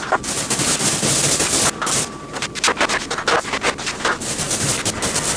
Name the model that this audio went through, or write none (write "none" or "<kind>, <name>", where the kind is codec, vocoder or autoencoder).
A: none